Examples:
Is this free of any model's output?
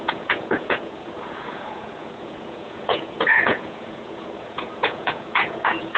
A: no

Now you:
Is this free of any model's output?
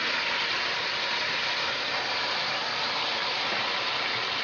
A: yes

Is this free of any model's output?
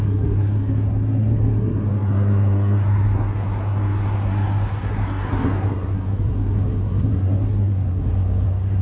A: no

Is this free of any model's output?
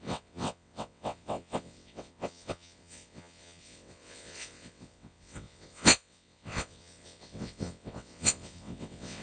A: no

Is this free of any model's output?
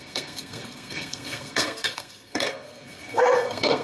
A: no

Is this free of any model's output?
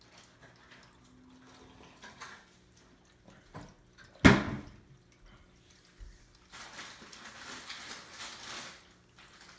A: yes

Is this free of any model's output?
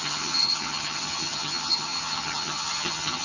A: no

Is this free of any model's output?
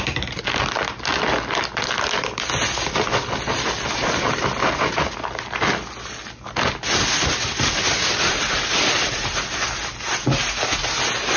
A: yes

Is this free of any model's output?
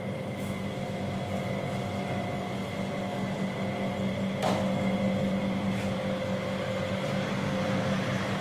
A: yes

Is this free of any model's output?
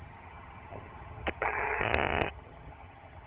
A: no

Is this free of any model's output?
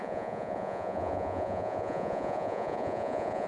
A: no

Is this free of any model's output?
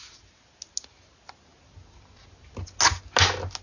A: yes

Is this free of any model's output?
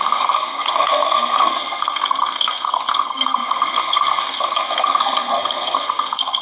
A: no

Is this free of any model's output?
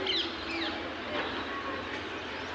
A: yes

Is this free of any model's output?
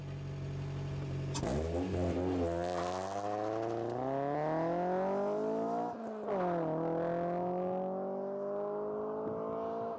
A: yes